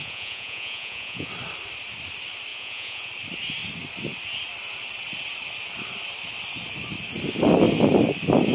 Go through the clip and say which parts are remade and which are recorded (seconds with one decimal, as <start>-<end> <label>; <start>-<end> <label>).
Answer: 0.0-1.3 remade; 1.3-2.5 recorded; 2.5-3.1 remade; 3.1-8.5 recorded